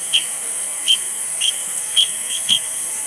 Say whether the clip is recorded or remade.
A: remade